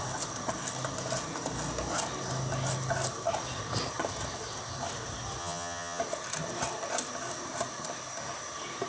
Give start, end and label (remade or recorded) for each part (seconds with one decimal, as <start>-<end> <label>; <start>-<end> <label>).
0.0-5.4 recorded; 5.4-6.0 remade; 6.0-8.9 recorded